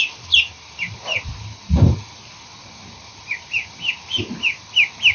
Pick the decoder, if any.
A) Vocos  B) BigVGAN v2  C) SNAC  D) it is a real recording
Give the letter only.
B